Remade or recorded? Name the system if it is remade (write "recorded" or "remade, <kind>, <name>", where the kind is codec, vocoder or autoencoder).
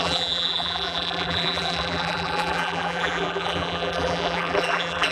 remade, vocoder, BigVGAN v2